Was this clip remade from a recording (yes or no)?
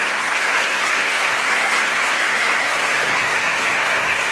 yes